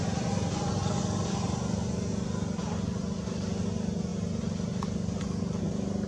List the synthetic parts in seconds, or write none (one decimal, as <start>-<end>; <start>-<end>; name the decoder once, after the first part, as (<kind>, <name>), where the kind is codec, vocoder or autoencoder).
2.6-3.2 (vocoder, BigVGAN v2); 4.1-5.2